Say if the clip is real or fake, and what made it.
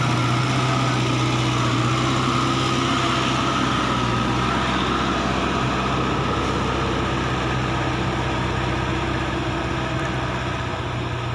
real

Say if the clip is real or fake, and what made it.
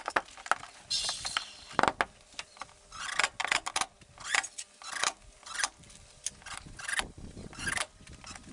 real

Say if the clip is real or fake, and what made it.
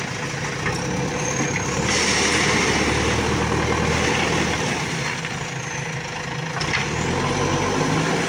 real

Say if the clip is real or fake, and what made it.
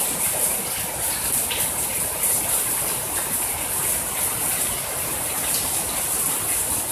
real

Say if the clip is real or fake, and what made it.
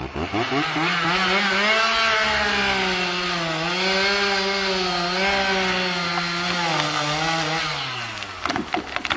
real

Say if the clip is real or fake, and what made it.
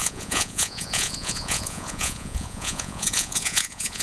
fake, vocoder, Vocos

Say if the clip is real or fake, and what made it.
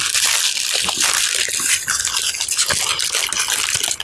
real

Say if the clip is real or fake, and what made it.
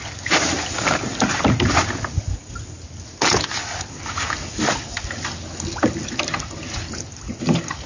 real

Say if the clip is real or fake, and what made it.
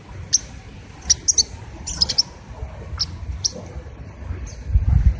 real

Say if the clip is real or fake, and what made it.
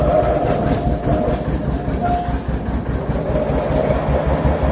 real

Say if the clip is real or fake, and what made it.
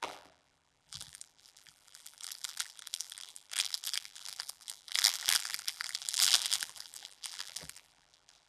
fake, vocoder, BigVGAN v2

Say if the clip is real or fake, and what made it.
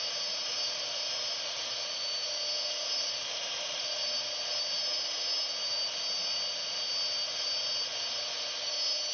real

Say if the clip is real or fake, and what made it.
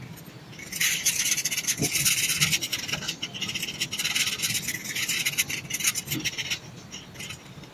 real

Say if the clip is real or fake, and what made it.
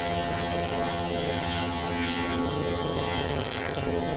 fake, vocoder, HiFi-GAN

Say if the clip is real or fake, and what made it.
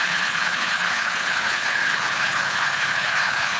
fake, codec, HILCodec